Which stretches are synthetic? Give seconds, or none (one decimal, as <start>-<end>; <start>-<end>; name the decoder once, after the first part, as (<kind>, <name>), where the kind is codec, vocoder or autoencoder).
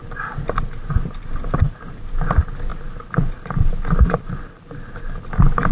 none